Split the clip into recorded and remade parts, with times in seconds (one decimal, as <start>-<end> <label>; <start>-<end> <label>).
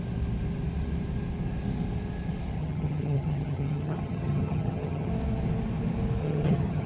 0.0-2.6 recorded; 2.6-5.1 remade; 5.1-6.2 recorded; 6.2-6.9 remade